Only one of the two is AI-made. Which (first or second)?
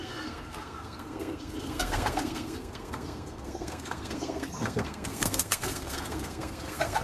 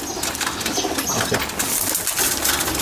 first